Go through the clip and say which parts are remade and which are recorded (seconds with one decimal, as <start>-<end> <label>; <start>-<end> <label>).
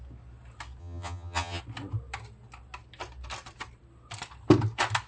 0.0-0.8 recorded; 0.8-1.6 remade; 1.6-5.1 recorded